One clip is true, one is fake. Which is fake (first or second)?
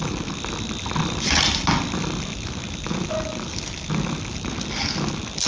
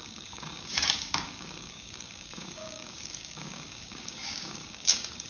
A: second